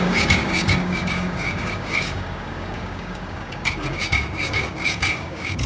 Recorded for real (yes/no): no